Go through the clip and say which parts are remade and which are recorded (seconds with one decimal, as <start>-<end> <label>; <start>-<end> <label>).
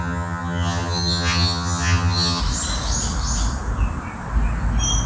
0.0-2.4 remade; 2.4-5.1 recorded